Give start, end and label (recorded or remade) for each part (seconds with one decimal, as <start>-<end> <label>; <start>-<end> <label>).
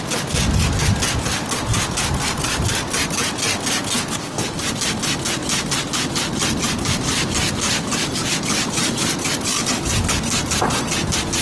0.0-5.4 recorded; 5.4-9.9 remade; 9.9-11.4 recorded